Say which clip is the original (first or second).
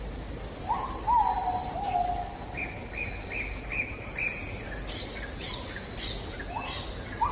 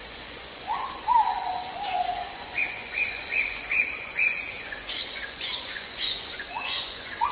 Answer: first